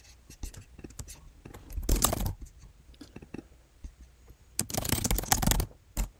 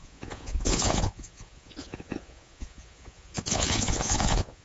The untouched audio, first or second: first